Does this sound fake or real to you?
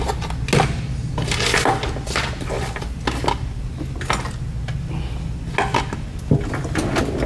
real